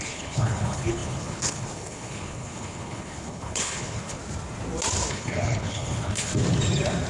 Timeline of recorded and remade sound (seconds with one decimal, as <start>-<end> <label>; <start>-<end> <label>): 0.0-4.2 remade; 4.2-5.1 recorded; 5.1-6.3 remade; 6.3-7.1 recorded